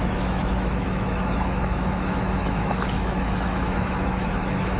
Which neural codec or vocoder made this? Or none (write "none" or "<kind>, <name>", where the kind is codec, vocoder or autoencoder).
autoencoder, DAC-VAE